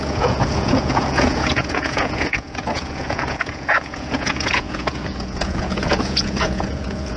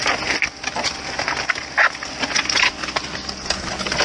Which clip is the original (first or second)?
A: second